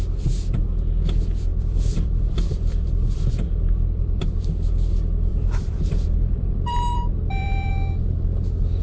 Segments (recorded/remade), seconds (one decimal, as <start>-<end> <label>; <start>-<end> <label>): 0.0-1.5 recorded; 1.5-4.2 remade; 4.2-5.3 recorded; 5.3-7.7 remade; 7.7-8.8 recorded